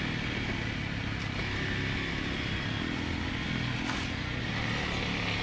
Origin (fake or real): real